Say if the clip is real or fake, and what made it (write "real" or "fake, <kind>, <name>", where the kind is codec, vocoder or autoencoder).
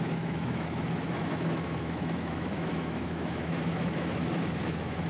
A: fake, autoencoder, DAC-VAE